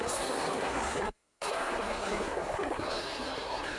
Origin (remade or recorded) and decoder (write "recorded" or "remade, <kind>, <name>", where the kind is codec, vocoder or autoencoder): remade, codec, SNAC